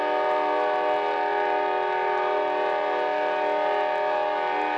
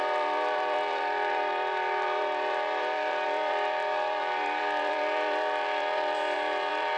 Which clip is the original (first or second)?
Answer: first